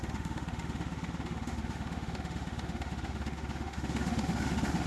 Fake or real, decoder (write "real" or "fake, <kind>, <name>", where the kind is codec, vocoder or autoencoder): fake, autoencoder, DAC-VAE